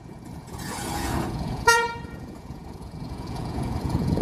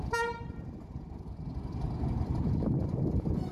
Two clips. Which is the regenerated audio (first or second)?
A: first